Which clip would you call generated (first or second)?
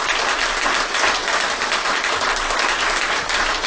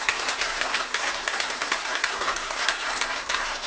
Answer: second